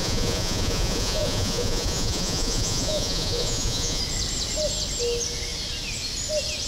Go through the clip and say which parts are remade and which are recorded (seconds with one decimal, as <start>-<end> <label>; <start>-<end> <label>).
0.0-4.0 remade; 4.0-6.7 recorded

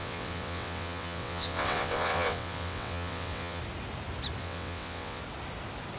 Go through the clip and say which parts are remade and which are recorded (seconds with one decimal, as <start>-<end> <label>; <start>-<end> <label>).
0.0-3.6 remade; 3.6-4.4 recorded; 4.4-5.2 remade; 5.2-6.0 recorded

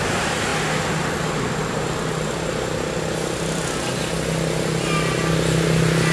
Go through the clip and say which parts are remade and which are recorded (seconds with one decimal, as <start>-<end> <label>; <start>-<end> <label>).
0.0-6.1 recorded